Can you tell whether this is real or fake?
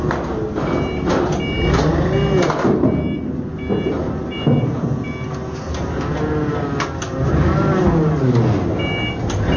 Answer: real